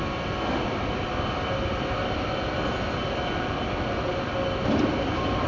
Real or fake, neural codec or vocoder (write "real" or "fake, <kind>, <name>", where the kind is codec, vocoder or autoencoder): real